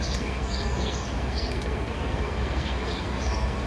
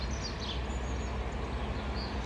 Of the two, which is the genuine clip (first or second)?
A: second